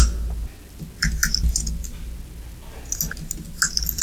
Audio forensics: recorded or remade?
recorded